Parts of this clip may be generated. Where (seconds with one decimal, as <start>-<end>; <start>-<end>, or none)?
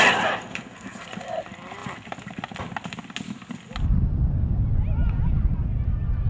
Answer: none